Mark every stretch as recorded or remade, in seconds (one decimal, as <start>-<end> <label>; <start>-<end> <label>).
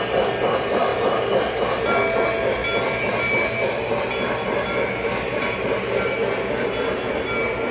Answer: 0.0-7.7 recorded